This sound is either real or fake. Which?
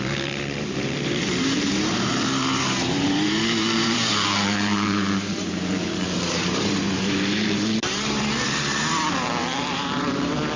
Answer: fake